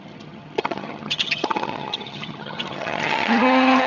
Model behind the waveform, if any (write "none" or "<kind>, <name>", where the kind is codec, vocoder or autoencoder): vocoder, HiFi-GAN